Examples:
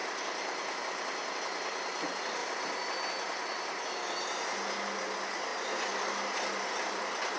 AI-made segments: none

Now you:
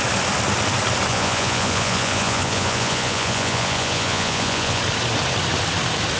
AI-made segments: 1.1-4.8 (vocoder, Vocos)

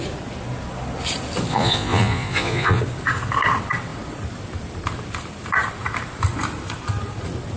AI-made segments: 1.5-2.8 (vocoder, Vocos)